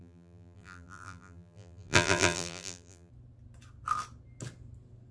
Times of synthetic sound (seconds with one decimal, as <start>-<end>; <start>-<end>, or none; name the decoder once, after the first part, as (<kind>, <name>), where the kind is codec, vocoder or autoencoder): 0.0-3.1 (vocoder, BigVGAN v2)